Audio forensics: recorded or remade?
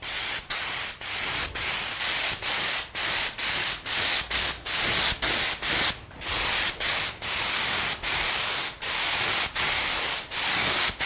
recorded